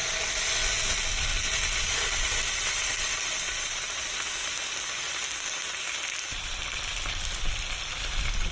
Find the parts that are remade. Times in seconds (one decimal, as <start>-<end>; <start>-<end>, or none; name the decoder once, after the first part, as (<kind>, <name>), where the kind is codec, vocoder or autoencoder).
none